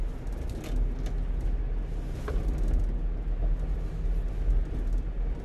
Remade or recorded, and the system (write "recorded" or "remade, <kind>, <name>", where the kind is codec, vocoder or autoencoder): recorded